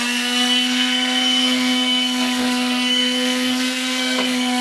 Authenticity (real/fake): fake